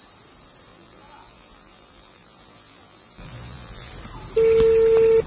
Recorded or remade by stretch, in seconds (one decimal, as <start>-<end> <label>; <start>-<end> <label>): 0.0-0.7 recorded; 0.7-3.9 remade; 3.9-5.3 recorded